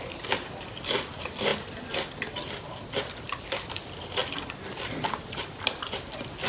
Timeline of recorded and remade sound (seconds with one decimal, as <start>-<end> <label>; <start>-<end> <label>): 0.0-4.2 remade; 4.2-5.1 recorded; 5.1-6.5 remade